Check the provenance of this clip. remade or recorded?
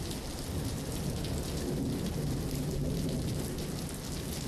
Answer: recorded